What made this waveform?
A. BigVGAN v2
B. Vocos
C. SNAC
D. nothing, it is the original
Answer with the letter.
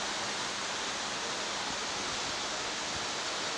D